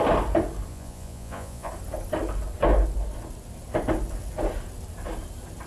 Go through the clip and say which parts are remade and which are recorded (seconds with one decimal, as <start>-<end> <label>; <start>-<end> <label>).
0.0-0.7 recorded; 0.7-1.7 remade; 1.7-5.7 recorded